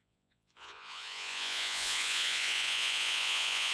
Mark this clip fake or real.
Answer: fake